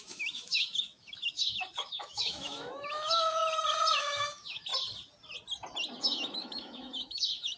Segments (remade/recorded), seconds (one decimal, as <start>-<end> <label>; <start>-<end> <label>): 0.0-3.4 remade; 3.4-3.9 recorded; 3.9-4.7 remade; 4.7-6.0 recorded; 6.0-7.6 remade